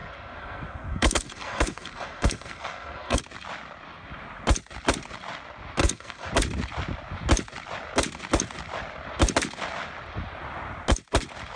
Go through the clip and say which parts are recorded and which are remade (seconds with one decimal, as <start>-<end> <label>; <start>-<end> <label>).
0.0-3.2 remade; 3.2-5.8 recorded; 5.8-6.3 remade; 6.3-11.6 recorded